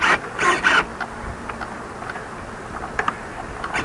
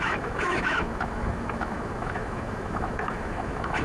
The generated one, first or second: second